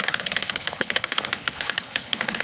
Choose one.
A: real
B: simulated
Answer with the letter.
B